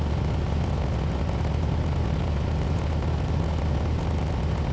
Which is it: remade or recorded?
recorded